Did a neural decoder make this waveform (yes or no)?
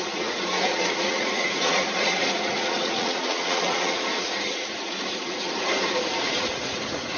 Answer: yes